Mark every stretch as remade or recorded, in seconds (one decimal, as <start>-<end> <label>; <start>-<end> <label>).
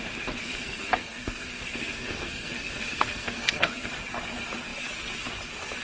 0.0-0.4 recorded; 0.4-3.9 remade; 3.9-5.8 recorded